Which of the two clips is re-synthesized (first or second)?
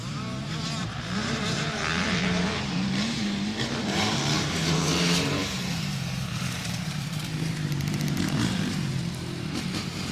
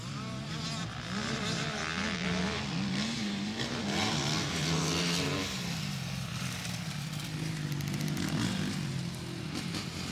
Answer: first